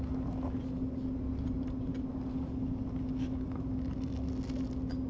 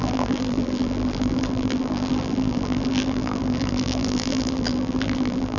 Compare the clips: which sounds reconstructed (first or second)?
second